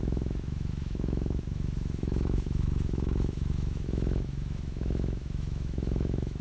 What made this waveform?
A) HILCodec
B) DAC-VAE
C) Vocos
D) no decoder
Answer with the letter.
B